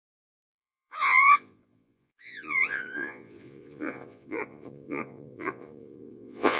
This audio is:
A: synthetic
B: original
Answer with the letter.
A